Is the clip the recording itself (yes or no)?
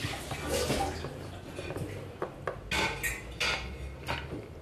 yes